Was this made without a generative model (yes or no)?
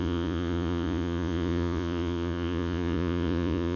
no